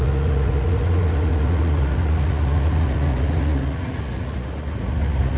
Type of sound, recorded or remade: remade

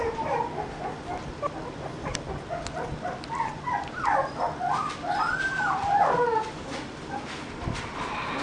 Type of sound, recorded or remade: recorded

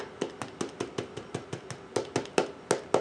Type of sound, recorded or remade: recorded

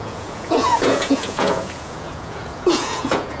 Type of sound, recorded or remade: remade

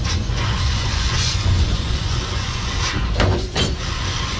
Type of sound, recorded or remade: remade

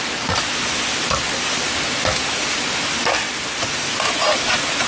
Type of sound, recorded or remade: recorded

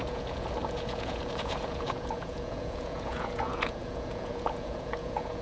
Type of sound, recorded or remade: remade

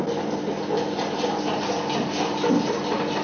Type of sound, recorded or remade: recorded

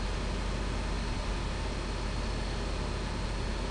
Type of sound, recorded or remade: recorded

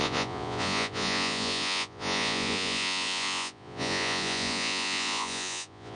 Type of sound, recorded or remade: remade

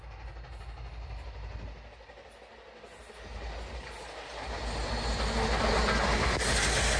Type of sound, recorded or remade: recorded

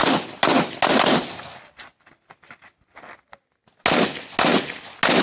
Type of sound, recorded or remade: recorded